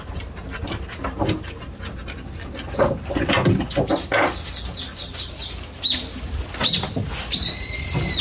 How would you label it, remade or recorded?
recorded